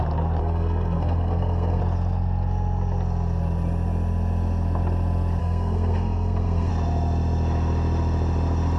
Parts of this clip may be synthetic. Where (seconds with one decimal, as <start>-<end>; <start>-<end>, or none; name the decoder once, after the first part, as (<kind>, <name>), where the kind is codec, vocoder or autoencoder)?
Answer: 0.4-1.8 (codec, SNAC); 5.4-6.7

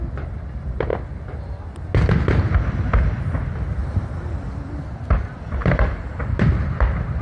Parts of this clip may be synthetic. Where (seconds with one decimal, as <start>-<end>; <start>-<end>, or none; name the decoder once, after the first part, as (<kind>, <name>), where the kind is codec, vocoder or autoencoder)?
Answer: 3.8-7.2 (vocoder, BigVGAN v2)

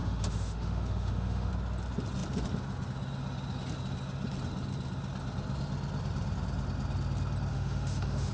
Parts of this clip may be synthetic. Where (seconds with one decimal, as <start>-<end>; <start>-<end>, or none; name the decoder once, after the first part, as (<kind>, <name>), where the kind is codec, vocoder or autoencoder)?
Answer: 0.0-1.5 (autoencoder, DAC-VAE); 7.5-8.3